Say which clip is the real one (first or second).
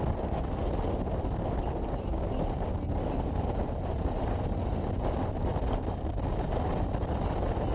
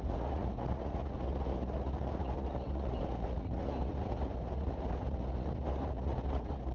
first